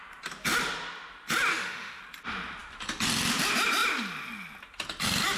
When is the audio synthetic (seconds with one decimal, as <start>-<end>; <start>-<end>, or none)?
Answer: 1.5-2.0